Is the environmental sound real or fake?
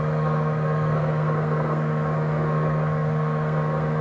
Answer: fake